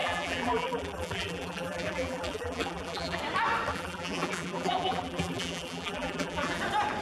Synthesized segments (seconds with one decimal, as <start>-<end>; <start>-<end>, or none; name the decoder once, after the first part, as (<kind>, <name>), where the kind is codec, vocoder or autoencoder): 0.0-3.2 (vocoder, BigVGAN v2); 3.7-6.6